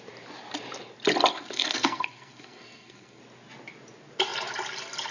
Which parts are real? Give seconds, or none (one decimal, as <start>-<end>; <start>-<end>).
0.0-1.3; 3.2-5.1